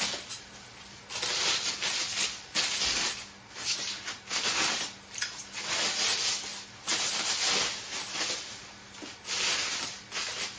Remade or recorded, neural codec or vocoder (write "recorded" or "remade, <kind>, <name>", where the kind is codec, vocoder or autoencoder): recorded